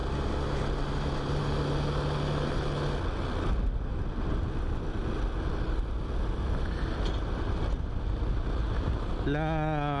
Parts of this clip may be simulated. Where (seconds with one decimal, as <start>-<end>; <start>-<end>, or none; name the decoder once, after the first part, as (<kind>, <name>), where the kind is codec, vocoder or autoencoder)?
none